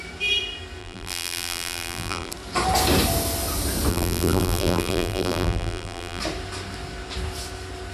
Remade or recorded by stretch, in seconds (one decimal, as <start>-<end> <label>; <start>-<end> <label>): 0.0-0.8 recorded; 0.8-2.3 remade; 2.3-3.9 recorded; 3.9-6.2 remade; 6.2-7.9 recorded